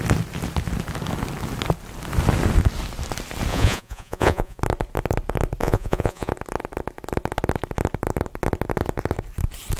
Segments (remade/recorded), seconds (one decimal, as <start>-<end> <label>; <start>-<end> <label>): 0.0-3.5 recorded; 3.5-4.6 remade; 4.6-5.6 recorded; 5.6-6.3 remade; 6.3-9.8 recorded